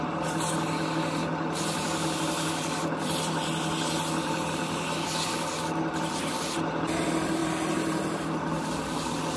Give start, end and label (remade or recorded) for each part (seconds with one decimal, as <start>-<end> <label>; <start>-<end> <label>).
0.0-9.4 recorded